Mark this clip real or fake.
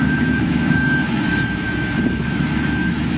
fake